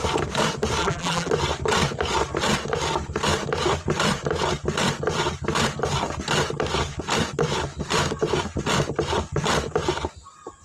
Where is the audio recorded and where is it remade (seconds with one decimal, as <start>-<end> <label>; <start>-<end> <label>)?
0.0-0.8 recorded; 0.8-1.3 remade; 1.3-10.6 recorded